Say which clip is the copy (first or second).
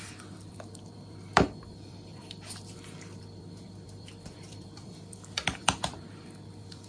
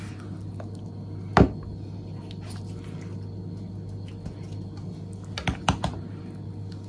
first